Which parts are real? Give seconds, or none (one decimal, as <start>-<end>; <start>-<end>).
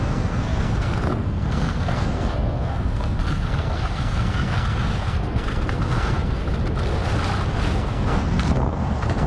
6.4-7.5